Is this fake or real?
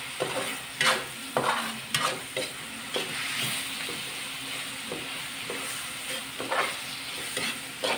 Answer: real